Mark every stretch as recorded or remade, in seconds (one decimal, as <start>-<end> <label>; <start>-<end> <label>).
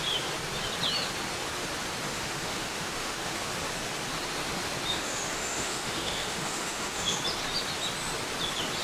0.0-2.1 recorded; 2.1-3.5 remade; 3.5-4.9 recorded; 4.9-7.2 remade; 7.2-8.8 recorded